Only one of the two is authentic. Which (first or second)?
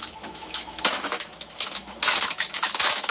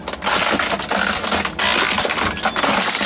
second